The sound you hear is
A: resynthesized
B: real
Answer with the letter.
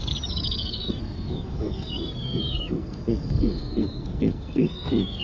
A